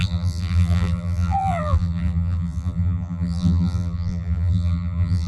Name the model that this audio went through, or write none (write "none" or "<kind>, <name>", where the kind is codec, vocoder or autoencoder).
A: vocoder, BigVGAN v2